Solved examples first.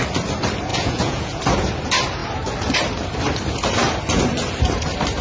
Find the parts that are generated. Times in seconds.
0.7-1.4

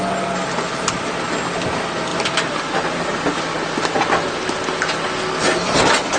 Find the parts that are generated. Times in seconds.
none

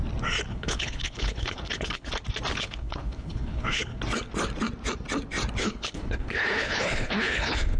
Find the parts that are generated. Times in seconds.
0.5-2.1; 2.5-4.0; 5.6-7.8

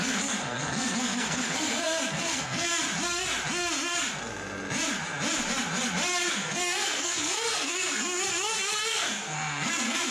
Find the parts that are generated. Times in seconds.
0.0-2.7; 6.3-10.1

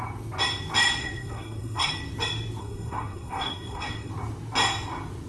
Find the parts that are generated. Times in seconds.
1.0-1.9; 2.6-4.1

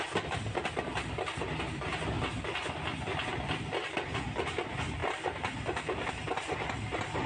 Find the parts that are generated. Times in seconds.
none

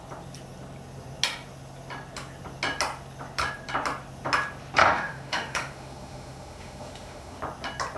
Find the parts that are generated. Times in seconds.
4.8-7.4

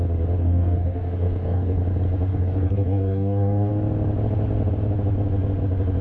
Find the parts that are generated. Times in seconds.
0.4-1.8; 2.3-3.7